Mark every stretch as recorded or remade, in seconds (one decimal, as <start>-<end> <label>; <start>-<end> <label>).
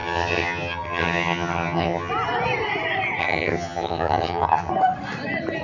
0.0-2.1 remade; 2.1-3.2 recorded; 3.2-4.7 remade; 4.7-5.6 recorded